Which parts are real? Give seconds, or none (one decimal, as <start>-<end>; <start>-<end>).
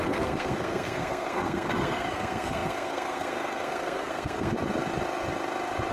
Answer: 4.5-5.9